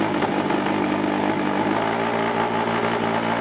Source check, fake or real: real